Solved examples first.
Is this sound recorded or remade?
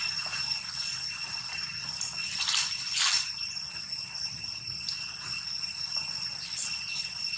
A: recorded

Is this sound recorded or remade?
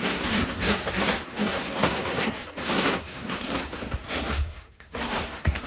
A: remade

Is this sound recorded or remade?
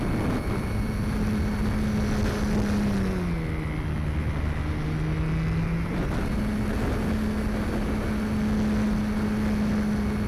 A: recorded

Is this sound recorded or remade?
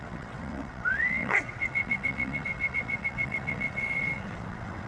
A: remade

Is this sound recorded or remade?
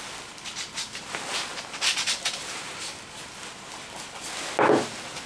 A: recorded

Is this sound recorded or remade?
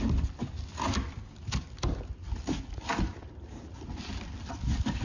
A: recorded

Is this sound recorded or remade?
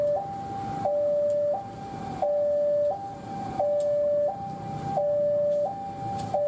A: recorded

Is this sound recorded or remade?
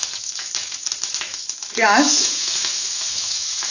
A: remade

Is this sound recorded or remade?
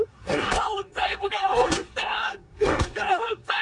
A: remade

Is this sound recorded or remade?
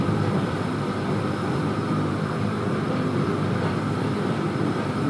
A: remade